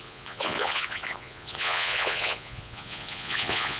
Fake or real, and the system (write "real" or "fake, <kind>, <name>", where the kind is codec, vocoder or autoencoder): fake, vocoder, Vocos